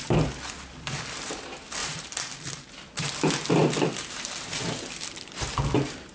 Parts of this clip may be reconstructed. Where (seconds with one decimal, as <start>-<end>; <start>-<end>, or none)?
1.8-2.7